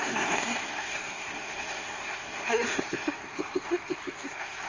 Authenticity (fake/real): fake